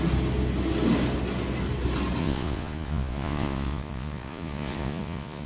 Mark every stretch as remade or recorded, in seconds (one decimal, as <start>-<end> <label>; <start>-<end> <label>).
0.0-2.2 recorded; 2.2-5.5 remade

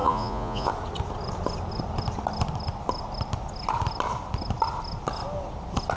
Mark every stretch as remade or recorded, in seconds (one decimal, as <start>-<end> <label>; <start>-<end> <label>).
0.0-0.7 remade; 0.7-6.0 recorded